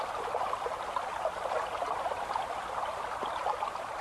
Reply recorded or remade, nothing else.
recorded